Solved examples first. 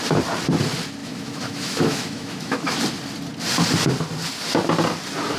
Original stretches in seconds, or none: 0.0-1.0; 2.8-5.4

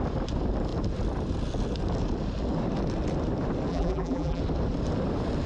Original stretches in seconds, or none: 0.0-3.7; 4.4-5.5

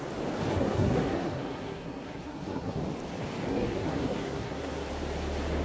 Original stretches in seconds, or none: 0.0-0.5; 2.8-3.5; 4.9-5.6

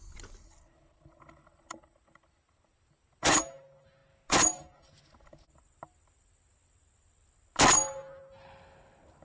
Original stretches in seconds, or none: 0.0-9.2

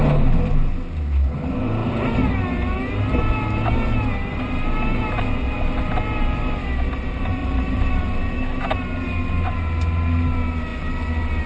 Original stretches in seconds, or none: 0.0-7.4; 8.2-11.5